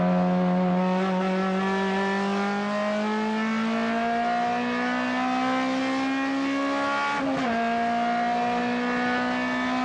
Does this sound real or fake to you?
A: real